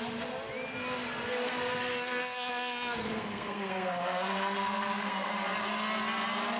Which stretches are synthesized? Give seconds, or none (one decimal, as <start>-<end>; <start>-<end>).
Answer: 1.4-5.3